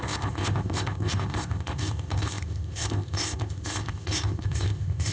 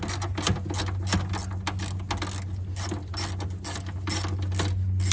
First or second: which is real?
second